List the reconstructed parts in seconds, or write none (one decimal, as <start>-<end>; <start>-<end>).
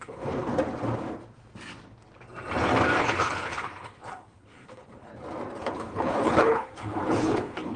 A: 0.0-0.5; 3.0-5.1; 5.6-7.8